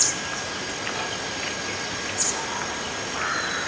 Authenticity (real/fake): real